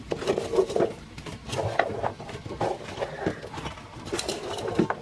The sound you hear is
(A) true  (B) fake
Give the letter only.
B